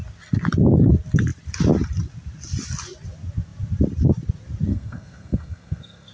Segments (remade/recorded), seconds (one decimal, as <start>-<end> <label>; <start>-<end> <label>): 0.0-4.7 recorded; 4.7-6.1 remade